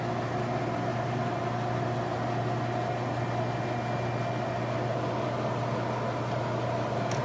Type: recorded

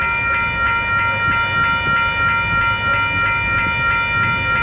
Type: recorded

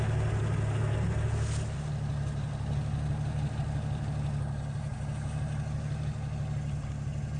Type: recorded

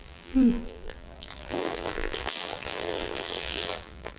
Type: remade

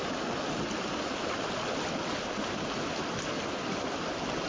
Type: recorded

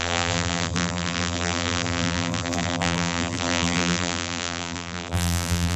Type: remade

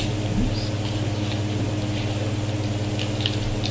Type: recorded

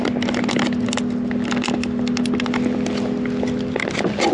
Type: recorded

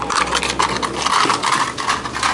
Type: recorded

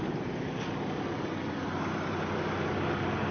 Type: recorded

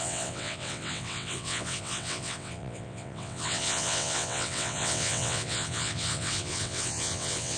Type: remade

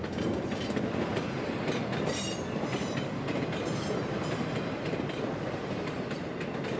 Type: recorded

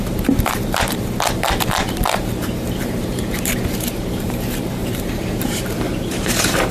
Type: remade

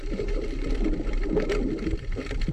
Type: remade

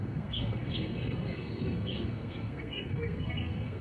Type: remade